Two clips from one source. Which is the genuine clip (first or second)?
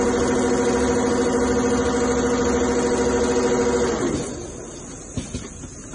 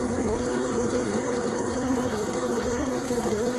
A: first